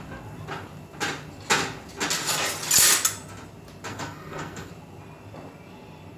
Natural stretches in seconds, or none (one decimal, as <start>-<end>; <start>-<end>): 0.0-3.9; 4.7-6.2